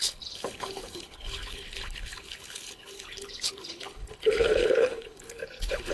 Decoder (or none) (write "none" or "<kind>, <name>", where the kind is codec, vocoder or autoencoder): codec, HILCodec